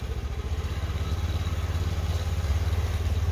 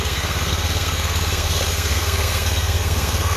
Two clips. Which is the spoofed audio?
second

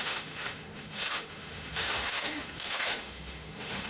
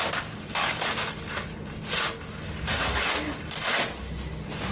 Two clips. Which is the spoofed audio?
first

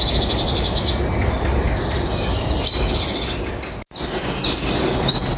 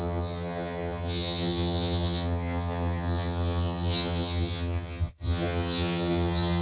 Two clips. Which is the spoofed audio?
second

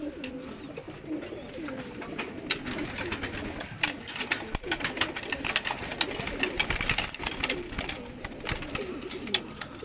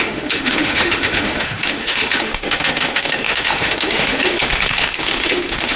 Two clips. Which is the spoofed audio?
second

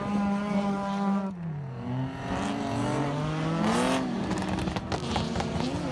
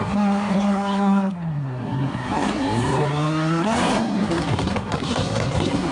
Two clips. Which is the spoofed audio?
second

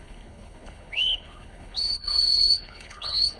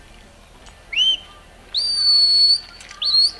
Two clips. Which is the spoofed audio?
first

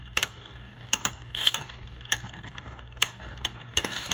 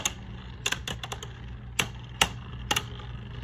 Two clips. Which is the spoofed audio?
first